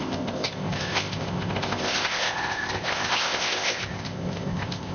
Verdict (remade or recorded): remade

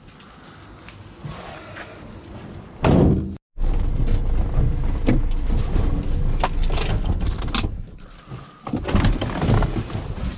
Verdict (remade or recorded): recorded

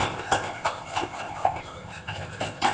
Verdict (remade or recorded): remade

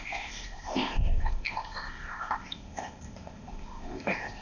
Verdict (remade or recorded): remade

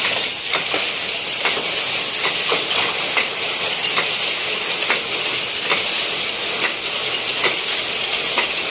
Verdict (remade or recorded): recorded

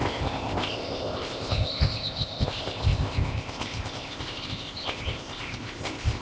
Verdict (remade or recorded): remade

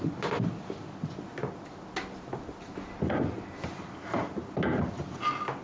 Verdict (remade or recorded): recorded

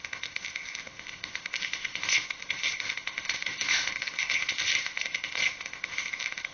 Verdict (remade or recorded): remade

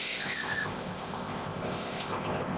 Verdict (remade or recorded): remade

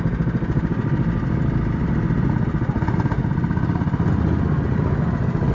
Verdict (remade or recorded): recorded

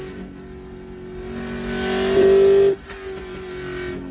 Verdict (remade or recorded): recorded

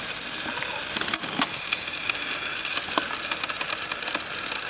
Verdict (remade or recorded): recorded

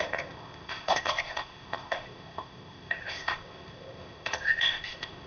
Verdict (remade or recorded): remade